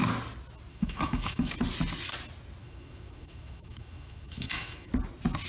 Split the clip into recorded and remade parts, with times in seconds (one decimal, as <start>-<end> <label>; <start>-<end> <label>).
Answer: 0.0-0.7 recorded; 0.7-1.5 remade; 1.5-2.6 recorded; 2.6-4.9 remade; 4.9-5.5 recorded